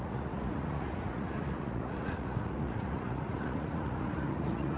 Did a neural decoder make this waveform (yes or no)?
yes